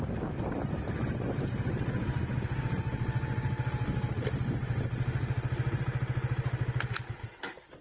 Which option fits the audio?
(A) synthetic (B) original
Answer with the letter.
B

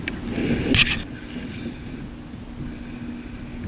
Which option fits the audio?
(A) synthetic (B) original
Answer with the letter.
B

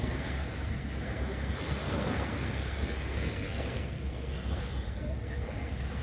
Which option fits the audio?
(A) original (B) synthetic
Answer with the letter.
B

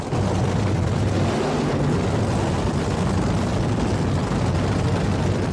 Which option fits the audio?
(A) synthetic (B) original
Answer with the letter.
B